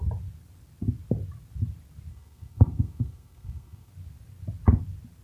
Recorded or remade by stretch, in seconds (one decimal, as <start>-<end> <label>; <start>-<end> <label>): 0.0-2.1 recorded; 2.1-3.9 remade; 3.9-5.2 recorded